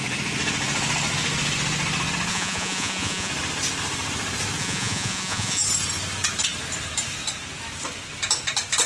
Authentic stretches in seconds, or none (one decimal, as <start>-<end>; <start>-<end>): 0.0-2.3; 3.3-4.6; 5.6-8.9